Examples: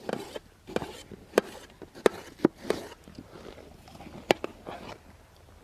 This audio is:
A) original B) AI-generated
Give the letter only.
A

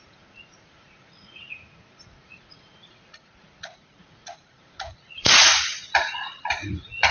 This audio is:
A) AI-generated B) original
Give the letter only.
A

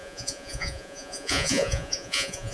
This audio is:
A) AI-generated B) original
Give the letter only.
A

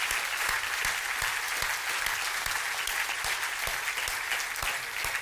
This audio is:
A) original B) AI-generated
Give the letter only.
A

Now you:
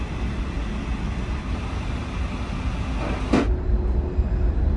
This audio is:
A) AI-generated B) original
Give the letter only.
B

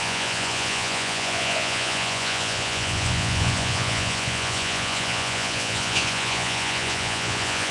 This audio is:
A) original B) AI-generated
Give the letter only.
B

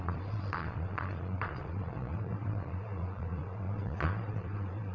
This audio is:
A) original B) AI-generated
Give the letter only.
B